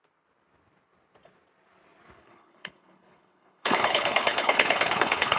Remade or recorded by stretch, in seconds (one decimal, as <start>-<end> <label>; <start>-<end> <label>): 0.0-2.2 recorded; 2.2-5.4 remade